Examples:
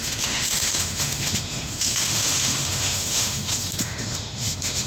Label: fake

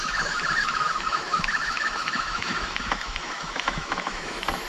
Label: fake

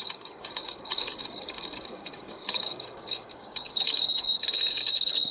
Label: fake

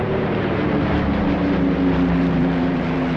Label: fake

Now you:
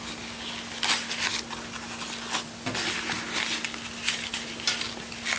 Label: real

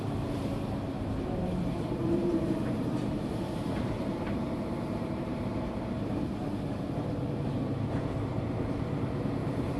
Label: fake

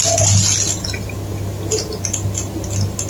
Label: real